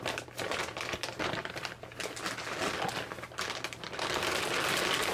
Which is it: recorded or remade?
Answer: recorded